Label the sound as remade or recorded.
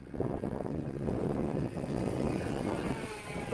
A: remade